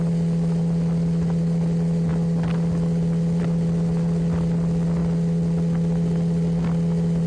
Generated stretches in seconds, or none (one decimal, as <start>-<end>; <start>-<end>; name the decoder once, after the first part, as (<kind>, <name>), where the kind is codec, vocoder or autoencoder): none